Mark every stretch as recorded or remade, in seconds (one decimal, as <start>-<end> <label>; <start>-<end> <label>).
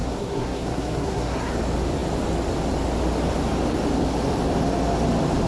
0.0-1.5 remade; 1.5-5.5 recorded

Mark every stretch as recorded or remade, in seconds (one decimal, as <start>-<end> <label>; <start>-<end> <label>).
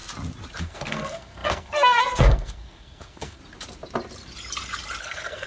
0.0-0.6 recorded; 0.6-3.4 remade; 3.4-5.0 recorded; 5.0-5.5 remade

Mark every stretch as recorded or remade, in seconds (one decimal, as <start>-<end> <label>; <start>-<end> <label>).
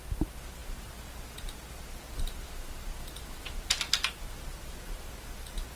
0.0-5.8 recorded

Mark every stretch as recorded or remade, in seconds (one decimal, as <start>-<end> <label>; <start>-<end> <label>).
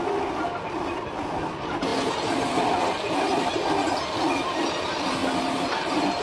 0.0-6.2 recorded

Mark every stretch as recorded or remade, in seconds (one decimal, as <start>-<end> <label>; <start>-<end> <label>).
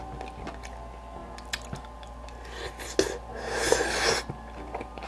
0.0-5.1 recorded